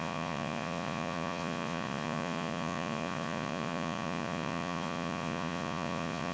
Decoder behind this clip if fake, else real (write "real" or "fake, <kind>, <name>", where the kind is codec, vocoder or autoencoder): fake, vocoder, Vocos